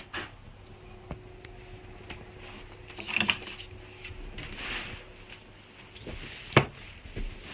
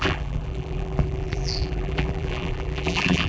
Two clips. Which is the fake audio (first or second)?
second